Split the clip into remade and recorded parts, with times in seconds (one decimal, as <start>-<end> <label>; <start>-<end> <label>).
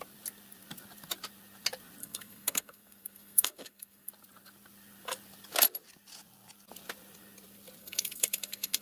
0.0-2.0 recorded; 2.0-4.1 remade; 4.1-7.8 recorded; 7.8-8.8 remade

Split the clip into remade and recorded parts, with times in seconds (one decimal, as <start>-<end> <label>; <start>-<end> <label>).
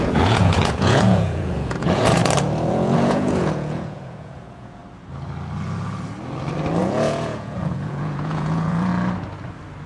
0.0-2.2 remade; 2.2-2.7 recorded; 2.7-4.8 remade; 4.8-6.8 recorded; 6.8-8.9 remade; 8.9-9.9 recorded